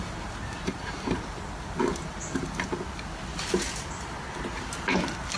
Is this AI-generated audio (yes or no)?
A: no